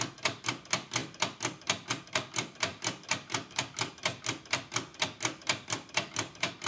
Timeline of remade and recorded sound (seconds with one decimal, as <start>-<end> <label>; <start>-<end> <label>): 0.0-2.7 recorded; 2.7-3.6 remade; 3.6-6.7 recorded